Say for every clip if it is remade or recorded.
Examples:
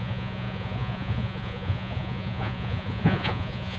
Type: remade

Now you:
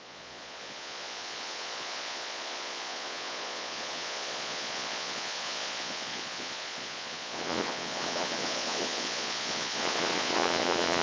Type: remade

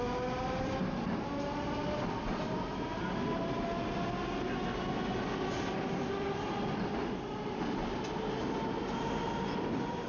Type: recorded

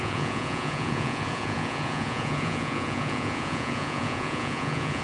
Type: remade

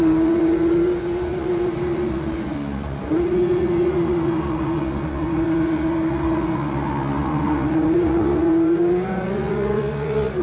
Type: remade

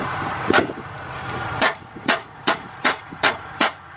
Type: remade